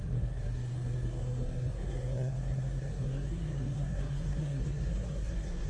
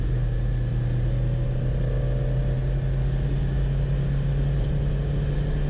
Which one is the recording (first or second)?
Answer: second